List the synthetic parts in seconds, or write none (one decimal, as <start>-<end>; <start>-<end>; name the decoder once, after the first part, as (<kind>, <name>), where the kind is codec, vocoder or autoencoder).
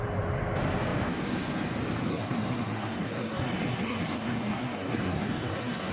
2.1-5.9 (codec, SNAC)